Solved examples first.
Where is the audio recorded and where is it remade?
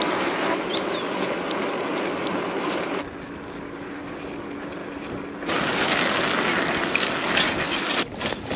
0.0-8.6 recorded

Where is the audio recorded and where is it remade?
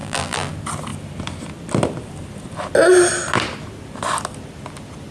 0.0-0.5 remade; 0.5-5.1 recorded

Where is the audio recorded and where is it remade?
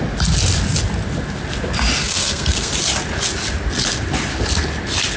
0.0-2.0 recorded; 2.0-2.7 remade; 2.7-5.2 recorded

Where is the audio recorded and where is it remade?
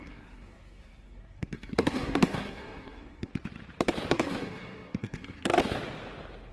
0.0-3.3 remade; 3.3-4.1 recorded; 4.1-5.6 remade; 5.6-6.5 recorded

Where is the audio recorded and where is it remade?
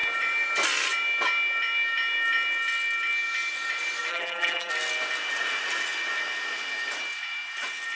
0.0-4.1 recorded; 4.1-4.7 remade; 4.7-8.0 recorded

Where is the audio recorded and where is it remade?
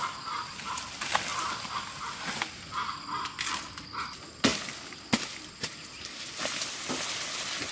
0.0-7.7 recorded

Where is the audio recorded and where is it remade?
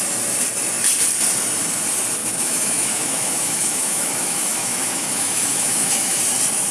0.0-2.2 recorded; 2.2-6.2 remade; 6.2-6.7 recorded